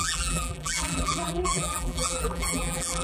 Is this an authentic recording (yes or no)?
no